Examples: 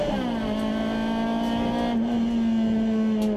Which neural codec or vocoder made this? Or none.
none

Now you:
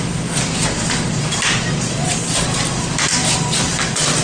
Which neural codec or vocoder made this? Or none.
none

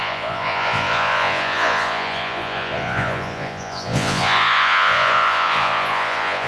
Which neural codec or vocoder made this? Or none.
vocoder, Vocos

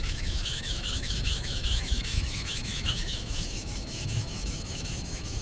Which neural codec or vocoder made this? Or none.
autoencoder, DAC-VAE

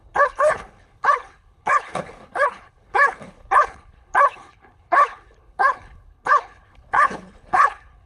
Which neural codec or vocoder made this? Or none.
codec, HILCodec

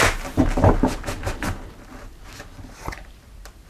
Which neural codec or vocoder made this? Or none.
none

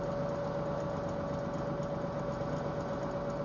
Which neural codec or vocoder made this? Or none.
none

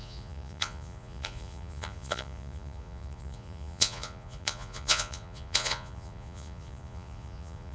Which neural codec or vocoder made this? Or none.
vocoder, Vocos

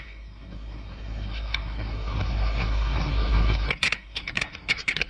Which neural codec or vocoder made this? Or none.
codec, SNAC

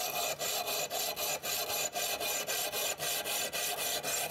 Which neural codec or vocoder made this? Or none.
none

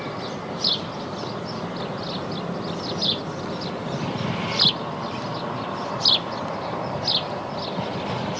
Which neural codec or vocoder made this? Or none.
none